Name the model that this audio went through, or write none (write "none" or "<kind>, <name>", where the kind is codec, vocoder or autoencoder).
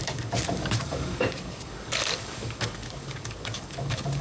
codec, DAC